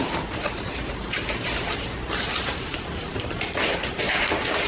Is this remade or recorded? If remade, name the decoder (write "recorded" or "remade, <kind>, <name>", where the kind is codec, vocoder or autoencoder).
remade, vocoder, BigVGAN v2